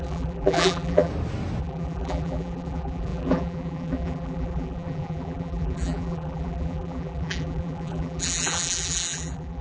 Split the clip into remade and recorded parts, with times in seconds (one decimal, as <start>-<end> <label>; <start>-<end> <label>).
0.0-1.1 remade; 1.1-1.6 recorded; 1.6-9.6 remade